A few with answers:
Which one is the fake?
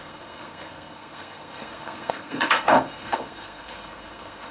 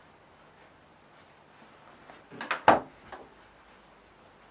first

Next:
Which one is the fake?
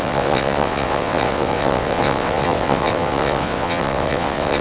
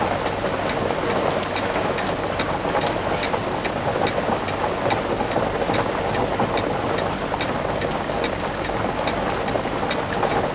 first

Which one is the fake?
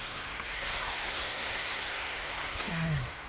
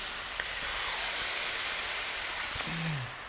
first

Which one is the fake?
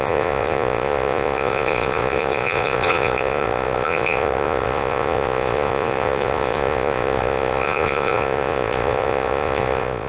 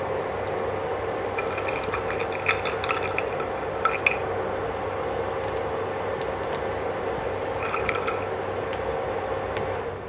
first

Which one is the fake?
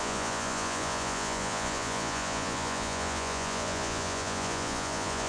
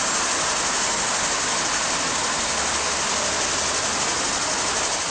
first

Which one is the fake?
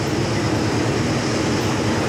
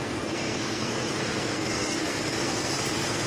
second